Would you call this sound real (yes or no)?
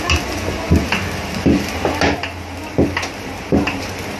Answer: yes